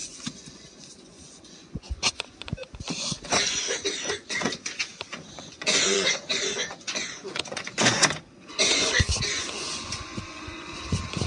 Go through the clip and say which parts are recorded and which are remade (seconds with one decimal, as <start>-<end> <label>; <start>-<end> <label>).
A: 0.0-11.3 remade